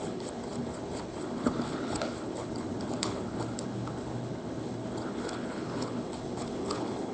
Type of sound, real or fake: fake